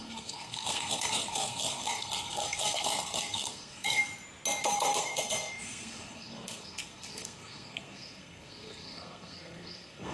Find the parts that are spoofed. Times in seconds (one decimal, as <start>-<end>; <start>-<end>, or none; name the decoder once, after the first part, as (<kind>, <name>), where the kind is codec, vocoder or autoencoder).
0.0-4.0 (codec, SNAC); 4.6-10.1